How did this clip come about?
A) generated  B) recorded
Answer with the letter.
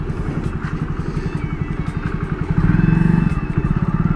B